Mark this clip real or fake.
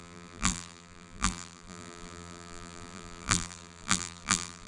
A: fake